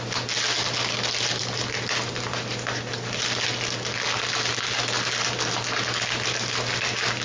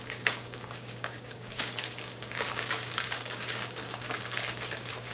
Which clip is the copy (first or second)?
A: second